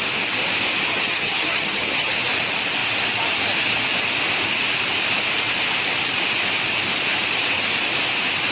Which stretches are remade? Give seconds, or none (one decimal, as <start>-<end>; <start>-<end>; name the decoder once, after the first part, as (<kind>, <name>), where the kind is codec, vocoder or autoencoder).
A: 0.9-2.1 (vocoder, HiFi-GAN)